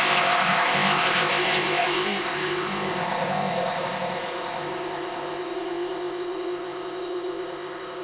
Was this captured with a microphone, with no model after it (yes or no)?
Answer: no